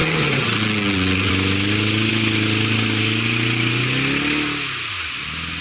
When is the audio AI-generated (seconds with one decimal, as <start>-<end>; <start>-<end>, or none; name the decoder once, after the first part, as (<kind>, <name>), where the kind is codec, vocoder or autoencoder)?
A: 0.0-1.3 (vocoder, WaveNeXt)